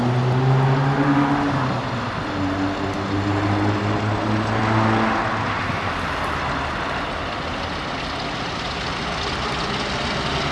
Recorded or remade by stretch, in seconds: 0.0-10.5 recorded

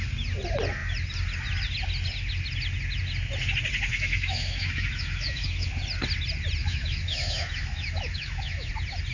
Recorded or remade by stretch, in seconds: 0.0-3.9 recorded; 3.9-5.7 remade; 5.7-6.6 recorded; 6.6-8.7 remade; 8.7-9.1 recorded

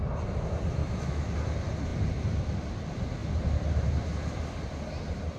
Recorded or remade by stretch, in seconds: 0.0-0.8 recorded; 0.8-1.3 remade; 1.3-5.4 recorded

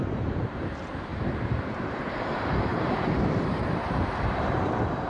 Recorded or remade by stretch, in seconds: 0.0-5.1 remade

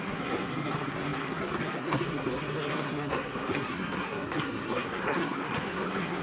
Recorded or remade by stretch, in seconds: 0.0-6.2 remade

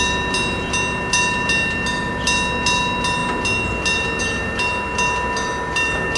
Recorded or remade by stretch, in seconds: 0.0-6.2 recorded